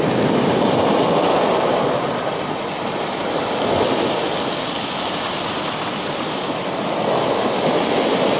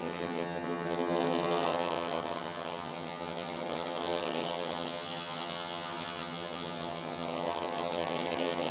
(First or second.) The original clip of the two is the first